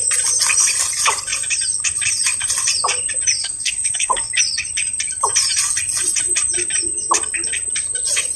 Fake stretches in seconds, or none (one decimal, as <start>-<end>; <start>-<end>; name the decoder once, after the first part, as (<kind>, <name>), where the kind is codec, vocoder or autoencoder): 3.4-4.3 (codec, SNAC)